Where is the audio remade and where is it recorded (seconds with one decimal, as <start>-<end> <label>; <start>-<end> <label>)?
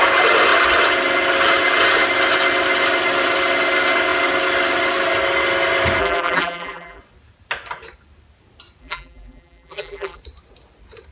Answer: 0.0-6.0 recorded; 6.0-7.0 remade; 7.0-8.8 recorded; 8.8-10.2 remade; 10.2-11.1 recorded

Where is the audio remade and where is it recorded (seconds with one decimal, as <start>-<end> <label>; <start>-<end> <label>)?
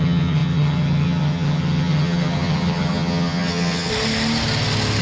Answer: 0.0-3.9 remade; 3.9-5.0 recorded